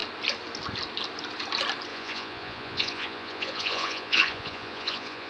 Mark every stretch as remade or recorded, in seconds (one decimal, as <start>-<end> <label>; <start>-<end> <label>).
0.0-1.9 recorded; 1.9-5.3 remade